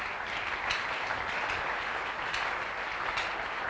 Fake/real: real